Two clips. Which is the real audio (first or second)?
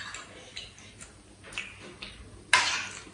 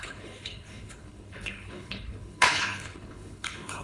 first